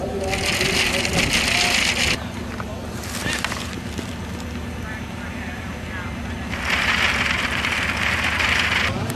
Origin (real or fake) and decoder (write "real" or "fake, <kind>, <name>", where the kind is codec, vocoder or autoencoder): real